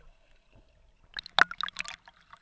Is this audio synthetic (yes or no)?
no